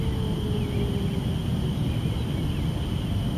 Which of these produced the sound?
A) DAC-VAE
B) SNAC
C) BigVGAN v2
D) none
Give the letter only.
D